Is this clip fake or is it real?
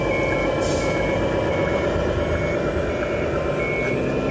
real